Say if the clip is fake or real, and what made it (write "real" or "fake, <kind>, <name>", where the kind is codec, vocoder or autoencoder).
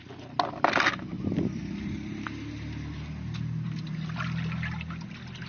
real